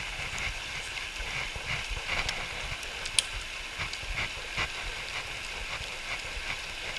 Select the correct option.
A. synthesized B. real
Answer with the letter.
B